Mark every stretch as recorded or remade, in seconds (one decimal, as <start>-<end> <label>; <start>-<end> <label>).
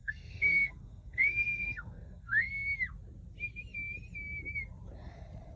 0.0-2.5 remade; 2.5-5.6 recorded